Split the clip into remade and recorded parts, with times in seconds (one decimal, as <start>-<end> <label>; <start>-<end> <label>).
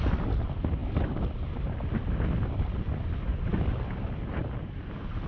0.0-5.3 recorded